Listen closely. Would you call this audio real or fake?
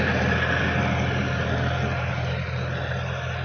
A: real